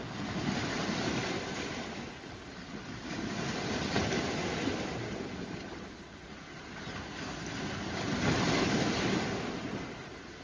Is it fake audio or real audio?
real